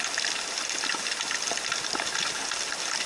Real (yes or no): yes